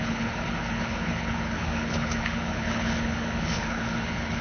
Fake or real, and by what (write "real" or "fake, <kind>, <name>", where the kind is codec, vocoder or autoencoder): fake, codec, HILCodec